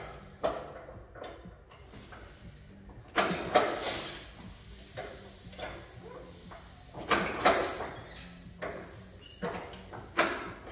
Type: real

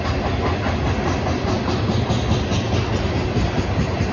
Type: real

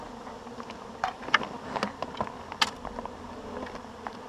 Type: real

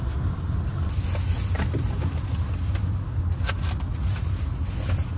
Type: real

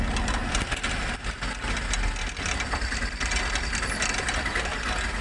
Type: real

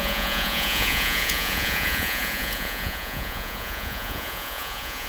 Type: fake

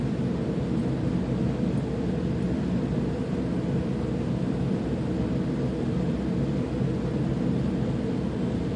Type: real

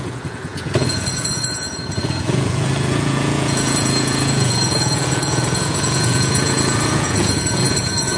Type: fake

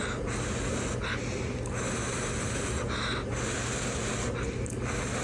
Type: real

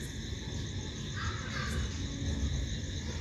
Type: real